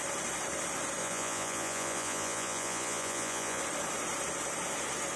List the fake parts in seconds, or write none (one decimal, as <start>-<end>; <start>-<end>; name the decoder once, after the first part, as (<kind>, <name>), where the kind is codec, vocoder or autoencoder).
1.0-3.6 (vocoder, Vocos)